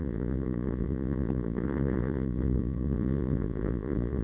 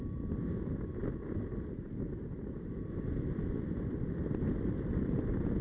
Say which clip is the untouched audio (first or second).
second